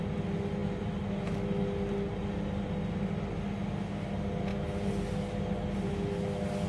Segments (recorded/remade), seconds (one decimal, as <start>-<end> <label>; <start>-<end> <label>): 0.0-6.7 recorded